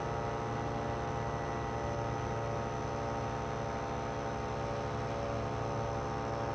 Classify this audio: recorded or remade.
recorded